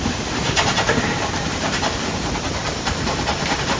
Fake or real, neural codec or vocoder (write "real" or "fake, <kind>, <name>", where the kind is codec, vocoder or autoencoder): fake, vocoder, BigVGAN v2